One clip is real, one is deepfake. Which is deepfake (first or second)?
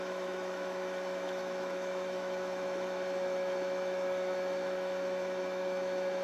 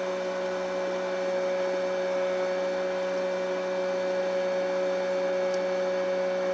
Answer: first